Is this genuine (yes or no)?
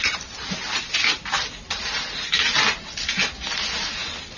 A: yes